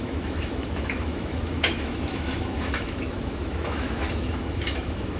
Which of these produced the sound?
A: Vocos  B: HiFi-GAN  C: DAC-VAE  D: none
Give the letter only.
C